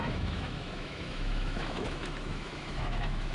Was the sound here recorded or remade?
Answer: remade